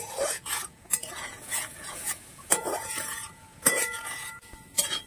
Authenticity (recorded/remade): remade